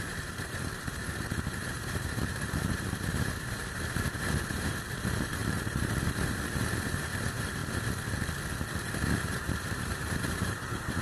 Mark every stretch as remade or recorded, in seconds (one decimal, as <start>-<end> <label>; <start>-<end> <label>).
0.0-7.6 remade; 7.6-8.7 recorded; 8.7-11.0 remade